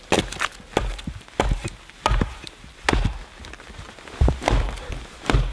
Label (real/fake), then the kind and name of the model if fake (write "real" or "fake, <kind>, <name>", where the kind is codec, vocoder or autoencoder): real